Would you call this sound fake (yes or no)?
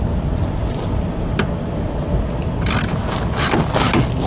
no